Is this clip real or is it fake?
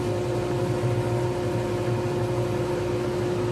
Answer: real